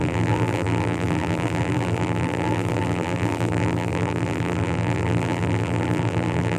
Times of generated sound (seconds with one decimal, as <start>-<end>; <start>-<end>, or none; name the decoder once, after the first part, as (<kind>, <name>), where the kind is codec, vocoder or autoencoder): 0.0-6.6 (vocoder, BigVGAN v2)